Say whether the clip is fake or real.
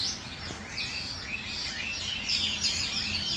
real